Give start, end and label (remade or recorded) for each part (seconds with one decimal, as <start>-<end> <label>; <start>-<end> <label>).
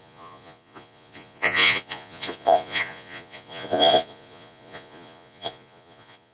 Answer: 0.0-6.3 remade